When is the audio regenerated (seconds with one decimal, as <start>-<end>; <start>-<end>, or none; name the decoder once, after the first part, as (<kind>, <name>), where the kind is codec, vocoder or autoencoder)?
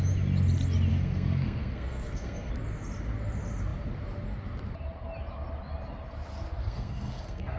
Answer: 0.9-2.5 (codec, SNAC); 6.6-7.6